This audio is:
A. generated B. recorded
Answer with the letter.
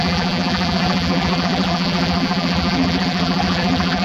A